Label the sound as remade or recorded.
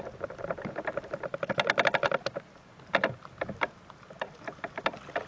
recorded